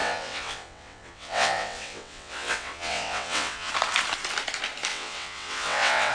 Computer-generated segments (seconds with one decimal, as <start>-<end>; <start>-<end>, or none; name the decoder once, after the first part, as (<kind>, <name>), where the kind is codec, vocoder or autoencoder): 0.0-3.7 (vocoder, WaveNeXt); 4.9-6.1